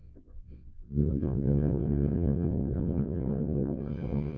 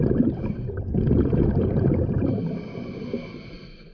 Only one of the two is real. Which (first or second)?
second